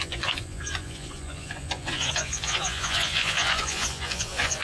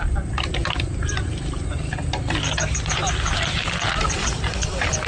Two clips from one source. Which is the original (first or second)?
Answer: second